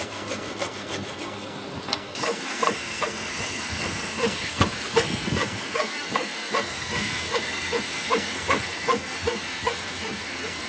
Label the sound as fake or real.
fake